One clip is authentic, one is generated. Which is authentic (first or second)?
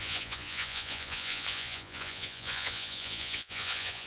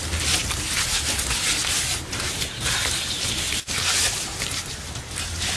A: second